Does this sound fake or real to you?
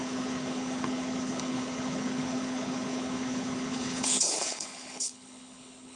fake